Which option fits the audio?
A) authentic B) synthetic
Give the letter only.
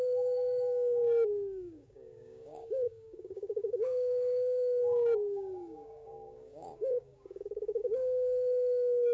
B